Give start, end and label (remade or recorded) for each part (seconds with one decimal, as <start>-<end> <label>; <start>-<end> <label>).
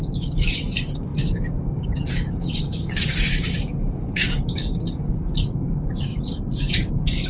0.0-7.3 remade